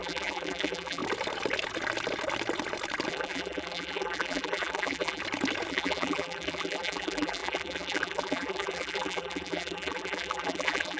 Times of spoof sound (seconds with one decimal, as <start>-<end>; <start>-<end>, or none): 0.0-1.0; 3.1-5.2; 5.7-11.0